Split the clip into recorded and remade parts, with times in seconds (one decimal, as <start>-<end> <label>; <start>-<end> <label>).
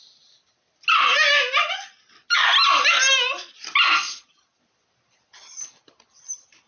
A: 0.0-4.0 recorded; 4.0-4.6 remade; 4.6-6.7 recorded